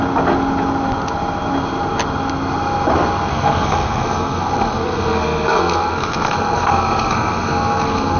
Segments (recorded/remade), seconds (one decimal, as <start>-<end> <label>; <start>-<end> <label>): 0.0-3.3 recorded; 3.3-8.2 remade